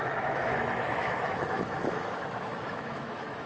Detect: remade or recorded remade